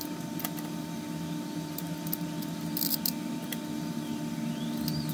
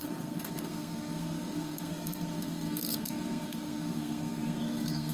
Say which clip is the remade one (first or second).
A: second